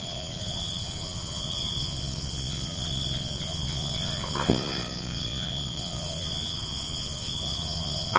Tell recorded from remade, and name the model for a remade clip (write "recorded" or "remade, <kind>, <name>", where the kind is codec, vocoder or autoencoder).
remade, vocoder, Vocos